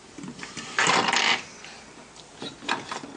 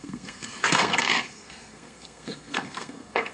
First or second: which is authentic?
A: first